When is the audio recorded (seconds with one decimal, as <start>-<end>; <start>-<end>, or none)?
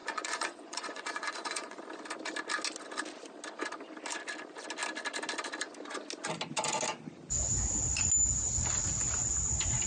1.8-9.9